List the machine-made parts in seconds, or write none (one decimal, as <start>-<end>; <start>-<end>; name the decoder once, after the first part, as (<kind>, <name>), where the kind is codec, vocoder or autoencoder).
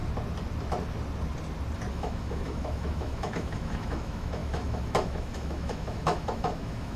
1.9-7.0 (autoencoder, DAC-VAE)